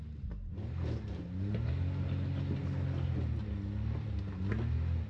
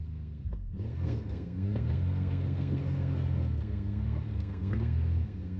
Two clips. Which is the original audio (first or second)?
first